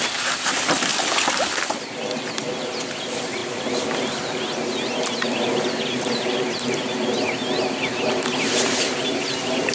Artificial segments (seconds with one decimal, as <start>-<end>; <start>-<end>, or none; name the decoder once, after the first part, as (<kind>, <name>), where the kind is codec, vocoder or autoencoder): none